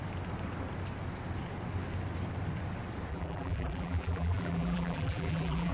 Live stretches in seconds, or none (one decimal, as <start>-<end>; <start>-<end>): 0.0-3.1